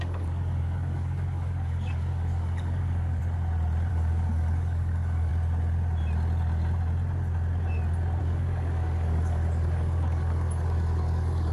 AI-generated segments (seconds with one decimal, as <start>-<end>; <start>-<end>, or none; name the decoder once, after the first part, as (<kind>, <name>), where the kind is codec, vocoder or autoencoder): 0.0-3.2 (codec, DAC); 3.9-5.3; 8.2-11.5